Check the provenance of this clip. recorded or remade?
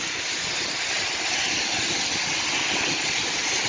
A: recorded